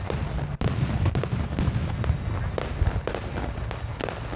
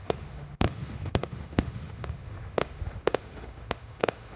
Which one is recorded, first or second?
first